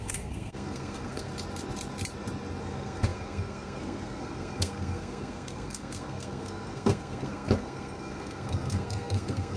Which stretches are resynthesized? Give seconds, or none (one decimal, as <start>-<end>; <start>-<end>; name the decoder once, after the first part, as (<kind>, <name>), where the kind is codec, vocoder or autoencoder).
0.0-1.3 (codec, SNAC); 2.6-9.6